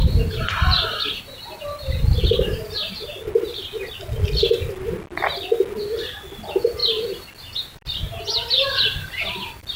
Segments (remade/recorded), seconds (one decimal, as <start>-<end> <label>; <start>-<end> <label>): 0.0-1.4 remade; 1.4-9.8 recorded